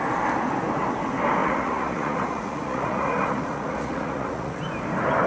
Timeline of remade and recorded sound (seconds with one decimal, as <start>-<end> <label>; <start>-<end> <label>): 0.0-1.4 recorded; 1.4-4.6 remade; 4.6-5.3 recorded